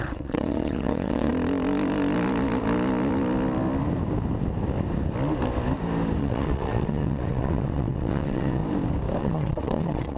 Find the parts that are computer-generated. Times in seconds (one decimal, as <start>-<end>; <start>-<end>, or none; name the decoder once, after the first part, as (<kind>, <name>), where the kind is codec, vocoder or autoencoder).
0.0-1.3 (vocoder, WaveNeXt); 6.2-8.6; 9.2-10.2